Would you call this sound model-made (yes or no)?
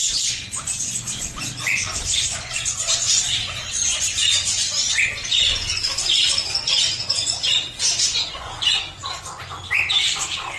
yes